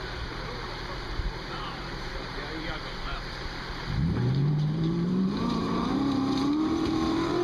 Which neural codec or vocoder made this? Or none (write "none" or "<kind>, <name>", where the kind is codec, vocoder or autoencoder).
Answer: vocoder, BigVGAN v2